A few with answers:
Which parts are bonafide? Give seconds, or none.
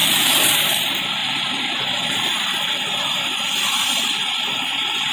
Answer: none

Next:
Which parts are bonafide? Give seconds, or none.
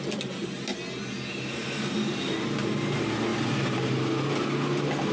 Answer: 0.0-3.3; 4.0-5.1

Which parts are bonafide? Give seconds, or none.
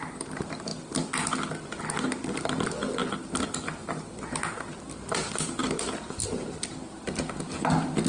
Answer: none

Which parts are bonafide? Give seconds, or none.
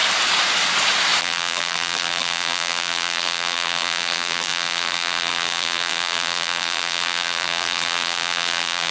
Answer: 0.0-1.2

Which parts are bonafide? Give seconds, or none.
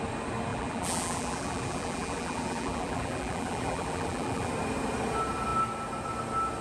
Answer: 0.0-0.5; 4.5-6.6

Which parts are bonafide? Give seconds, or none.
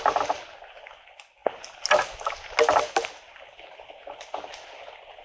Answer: 0.0-5.2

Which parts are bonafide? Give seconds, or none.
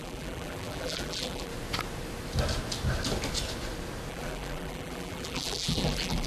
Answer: 1.5-4.1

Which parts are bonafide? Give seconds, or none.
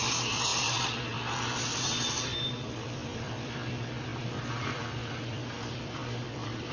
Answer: 0.5-2.5